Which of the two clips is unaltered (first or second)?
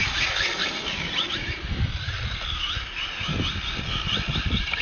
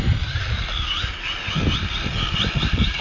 second